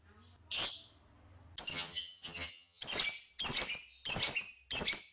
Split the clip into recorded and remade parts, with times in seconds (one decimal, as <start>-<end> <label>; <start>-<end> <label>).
0.0-1.7 recorded; 1.7-2.8 remade; 2.8-5.1 recorded